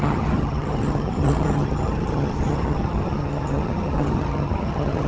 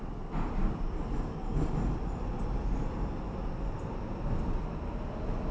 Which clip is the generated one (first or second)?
first